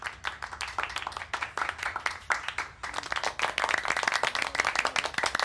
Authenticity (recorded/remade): recorded